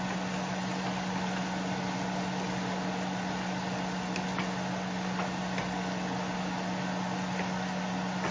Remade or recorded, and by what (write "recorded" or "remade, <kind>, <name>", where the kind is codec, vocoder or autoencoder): recorded